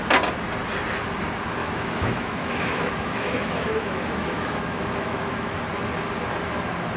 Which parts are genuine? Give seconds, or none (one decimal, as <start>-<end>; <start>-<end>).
0.0-1.6; 5.6-7.0

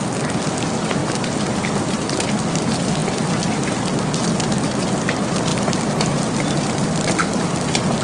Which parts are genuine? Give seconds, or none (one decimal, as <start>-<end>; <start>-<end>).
0.0-1.0; 1.7-8.0

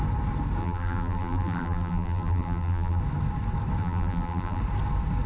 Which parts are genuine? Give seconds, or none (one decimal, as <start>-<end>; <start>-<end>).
0.0-0.6; 3.0-3.8; 4.6-5.3

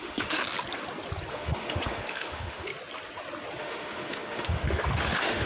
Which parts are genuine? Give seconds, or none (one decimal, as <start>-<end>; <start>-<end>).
0.4-1.3; 2.7-3.6

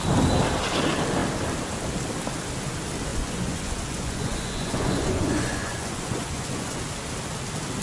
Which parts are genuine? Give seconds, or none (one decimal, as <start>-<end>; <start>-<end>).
0.0-3.1; 6.8-7.8

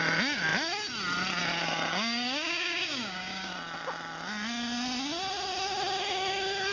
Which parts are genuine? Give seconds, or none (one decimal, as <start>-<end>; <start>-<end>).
0.0-1.9; 3.5-6.7

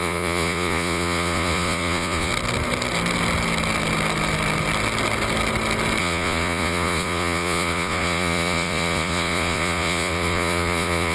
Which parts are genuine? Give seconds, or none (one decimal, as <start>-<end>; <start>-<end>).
2.3-6.0